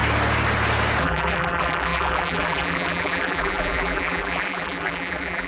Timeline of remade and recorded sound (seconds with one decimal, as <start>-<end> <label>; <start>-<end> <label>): 0.0-1.0 recorded; 1.0-5.5 remade